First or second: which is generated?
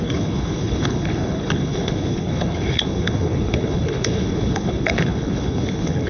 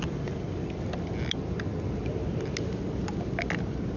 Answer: first